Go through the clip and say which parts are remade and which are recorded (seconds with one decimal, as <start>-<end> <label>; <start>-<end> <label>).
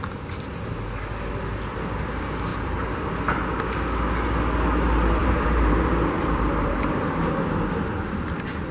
0.0-2.5 recorded; 2.5-3.1 remade; 3.1-5.2 recorded; 5.2-7.2 remade; 7.2-8.7 recorded